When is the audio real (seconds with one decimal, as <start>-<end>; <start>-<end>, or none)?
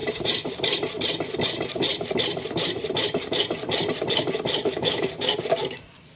0.0-4.6; 5.1-6.2